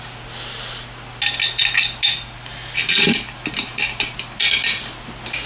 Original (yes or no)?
yes